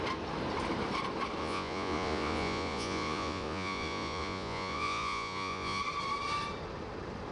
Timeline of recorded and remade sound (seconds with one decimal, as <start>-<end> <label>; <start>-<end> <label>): 0.0-1.4 recorded; 1.4-5.8 remade; 5.8-7.3 recorded